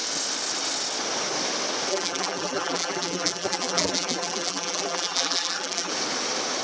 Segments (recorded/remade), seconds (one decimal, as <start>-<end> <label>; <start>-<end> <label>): 0.0-1.9 recorded; 1.9-5.9 remade; 5.9-6.6 recorded